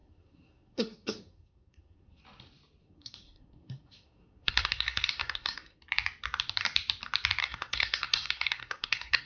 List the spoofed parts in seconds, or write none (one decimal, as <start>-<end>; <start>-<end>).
0.0-2.2; 2.8-5.8; 7.4-9.3